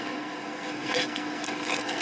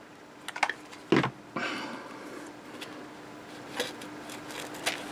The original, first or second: second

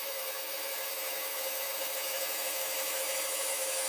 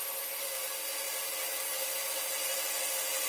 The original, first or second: second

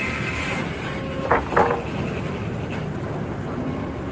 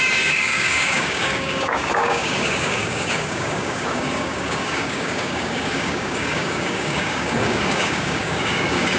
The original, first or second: first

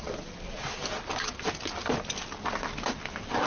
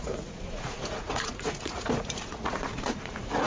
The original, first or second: first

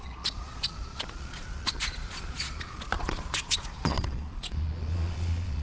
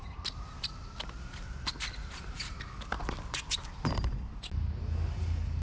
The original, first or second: second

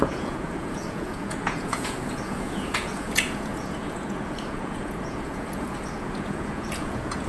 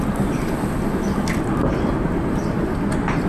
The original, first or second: second